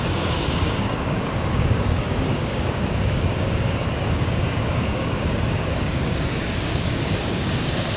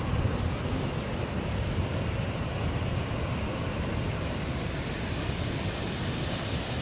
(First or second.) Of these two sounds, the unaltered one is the second